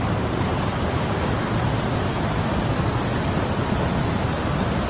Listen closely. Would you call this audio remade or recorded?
recorded